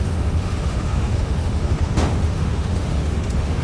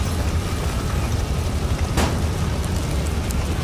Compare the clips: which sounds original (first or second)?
second